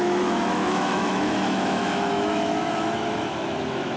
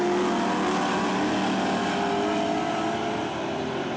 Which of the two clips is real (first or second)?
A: second